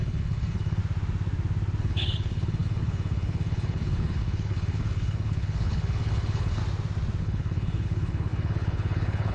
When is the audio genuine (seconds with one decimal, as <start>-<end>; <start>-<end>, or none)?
0.8-1.8; 6.6-7.2

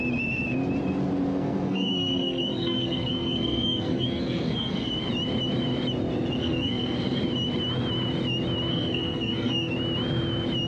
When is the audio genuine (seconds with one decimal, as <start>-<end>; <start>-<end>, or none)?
0.0-1.3; 4.9-6.4; 7.2-8.7; 9.7-10.7

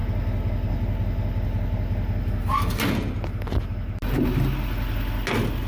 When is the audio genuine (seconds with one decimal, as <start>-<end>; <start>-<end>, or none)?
0.0-5.7

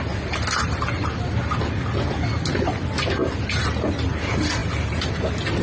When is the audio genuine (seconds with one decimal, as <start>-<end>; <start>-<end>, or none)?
0.0-5.6

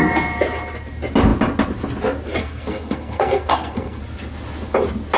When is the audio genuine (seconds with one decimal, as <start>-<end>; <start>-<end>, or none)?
0.0-2.4; 4.0-5.2

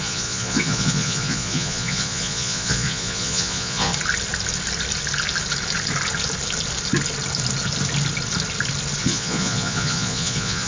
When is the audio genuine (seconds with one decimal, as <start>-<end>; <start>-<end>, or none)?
3.9-9.0

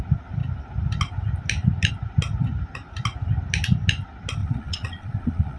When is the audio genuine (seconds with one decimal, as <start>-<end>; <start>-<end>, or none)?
0.0-4.4